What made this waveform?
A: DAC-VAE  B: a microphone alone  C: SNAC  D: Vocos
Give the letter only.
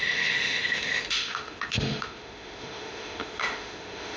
A